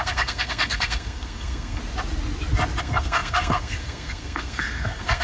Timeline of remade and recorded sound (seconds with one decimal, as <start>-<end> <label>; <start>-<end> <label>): 0.0-1.8 remade; 1.8-2.8 recorded; 2.8-5.2 remade